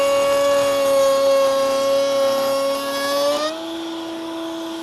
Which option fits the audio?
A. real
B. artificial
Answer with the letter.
A